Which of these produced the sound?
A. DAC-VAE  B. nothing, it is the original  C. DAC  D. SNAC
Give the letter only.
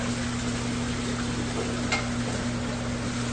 B